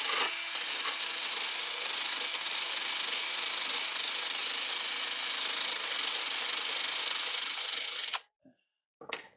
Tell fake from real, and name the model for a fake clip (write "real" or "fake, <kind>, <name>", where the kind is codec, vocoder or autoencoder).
real